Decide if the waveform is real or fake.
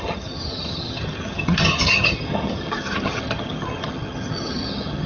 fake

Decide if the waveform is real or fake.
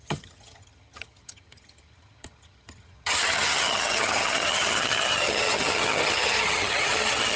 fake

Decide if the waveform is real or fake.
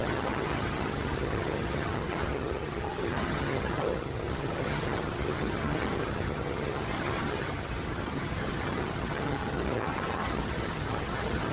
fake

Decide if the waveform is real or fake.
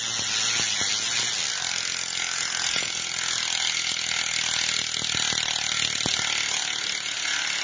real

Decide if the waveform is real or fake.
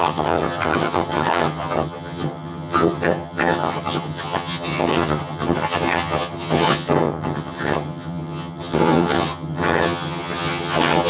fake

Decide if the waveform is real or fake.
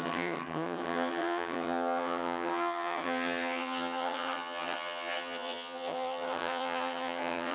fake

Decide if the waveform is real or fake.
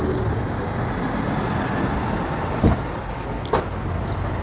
real